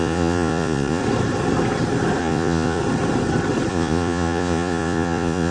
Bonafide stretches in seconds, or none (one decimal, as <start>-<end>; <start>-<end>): 1.0-2.2; 2.8-3.7